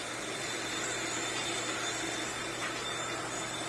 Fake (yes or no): no